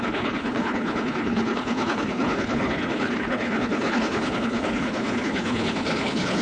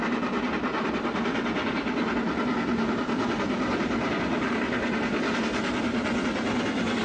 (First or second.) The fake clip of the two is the first